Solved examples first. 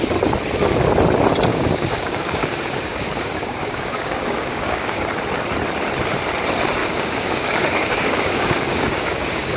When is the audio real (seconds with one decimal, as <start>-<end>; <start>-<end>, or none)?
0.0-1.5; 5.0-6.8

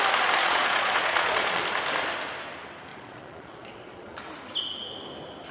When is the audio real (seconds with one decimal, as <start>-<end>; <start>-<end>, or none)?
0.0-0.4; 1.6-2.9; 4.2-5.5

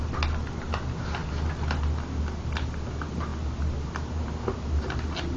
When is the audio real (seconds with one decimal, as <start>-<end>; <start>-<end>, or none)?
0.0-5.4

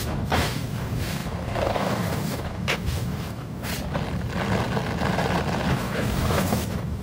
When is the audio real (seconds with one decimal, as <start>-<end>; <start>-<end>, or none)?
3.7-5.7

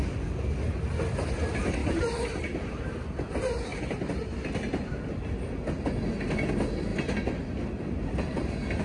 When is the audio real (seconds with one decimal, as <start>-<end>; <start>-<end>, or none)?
0.0-8.8

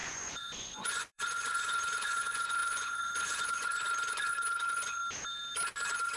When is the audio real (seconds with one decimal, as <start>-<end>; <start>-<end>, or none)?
5.0-6.2

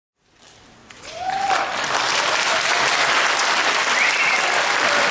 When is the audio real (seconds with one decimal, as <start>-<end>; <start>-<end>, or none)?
0.0-0.8; 1.4-5.1

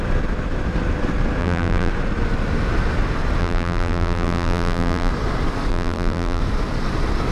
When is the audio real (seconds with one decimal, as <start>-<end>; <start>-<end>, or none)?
0.0-1.4; 1.9-3.4; 5.1-5.7; 6.4-7.3